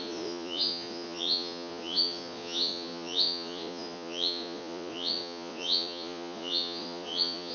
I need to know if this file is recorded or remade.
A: remade